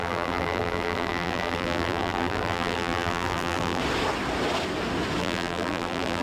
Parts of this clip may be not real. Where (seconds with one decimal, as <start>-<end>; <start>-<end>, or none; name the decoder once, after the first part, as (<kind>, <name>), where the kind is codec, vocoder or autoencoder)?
0.0-3.8 (vocoder, BigVGAN v2); 5.2-6.2